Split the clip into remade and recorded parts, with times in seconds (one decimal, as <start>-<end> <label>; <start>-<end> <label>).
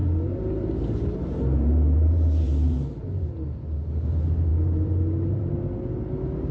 0.0-3.3 remade; 3.3-4.5 recorded; 4.5-5.5 remade; 5.5-6.5 recorded